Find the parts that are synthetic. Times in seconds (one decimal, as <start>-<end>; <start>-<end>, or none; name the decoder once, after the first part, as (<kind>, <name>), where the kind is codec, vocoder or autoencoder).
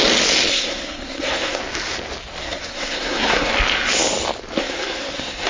0.5-1.6 (codec, SNAC); 2.4-3.5; 4.6-5.5